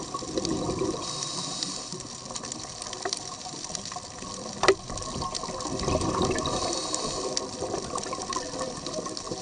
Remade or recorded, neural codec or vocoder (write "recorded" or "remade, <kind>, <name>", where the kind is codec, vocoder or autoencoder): recorded